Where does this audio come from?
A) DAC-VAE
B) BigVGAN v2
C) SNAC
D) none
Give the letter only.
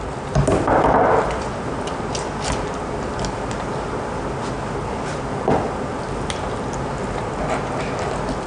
D